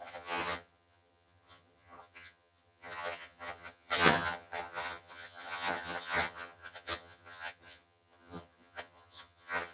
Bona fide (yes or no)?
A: no